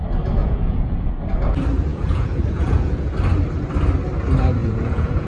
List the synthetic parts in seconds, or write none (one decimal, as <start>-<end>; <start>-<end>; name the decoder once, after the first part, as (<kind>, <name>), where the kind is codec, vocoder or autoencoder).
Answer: 0.4-1.1 (vocoder, Vocos); 1.9-3.1; 4.6-5.3